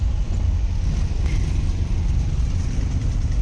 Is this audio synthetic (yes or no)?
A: no